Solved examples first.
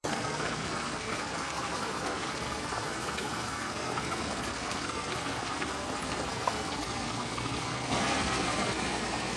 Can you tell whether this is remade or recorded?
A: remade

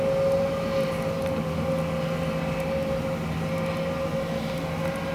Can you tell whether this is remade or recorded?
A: recorded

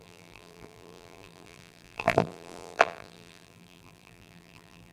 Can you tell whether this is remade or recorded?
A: remade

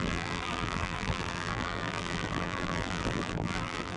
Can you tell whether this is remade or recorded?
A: remade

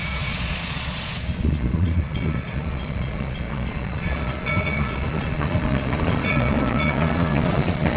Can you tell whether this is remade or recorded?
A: remade